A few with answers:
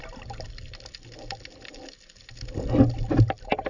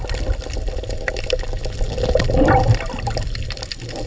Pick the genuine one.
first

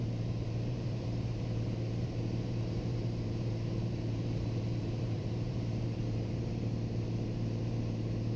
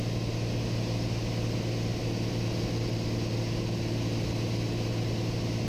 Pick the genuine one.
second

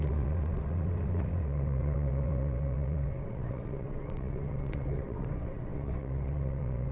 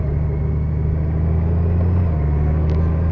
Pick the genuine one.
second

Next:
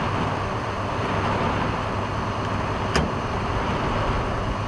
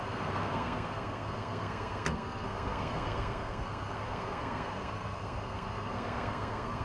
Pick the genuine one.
first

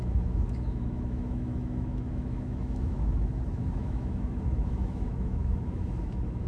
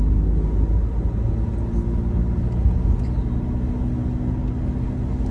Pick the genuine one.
second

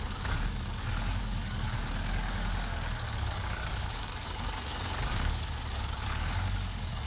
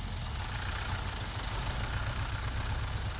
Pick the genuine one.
second